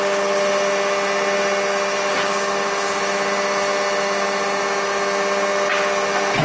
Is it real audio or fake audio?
real